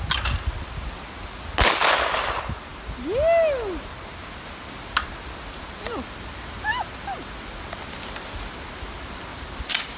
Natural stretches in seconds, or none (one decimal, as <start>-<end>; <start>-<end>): 0.0-9.3